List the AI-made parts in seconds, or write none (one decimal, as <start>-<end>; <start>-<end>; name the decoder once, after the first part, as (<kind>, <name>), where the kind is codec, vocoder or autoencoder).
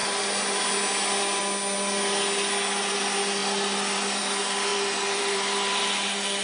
3.4-4.2 (vocoder, BigVGAN v2); 4.7-5.8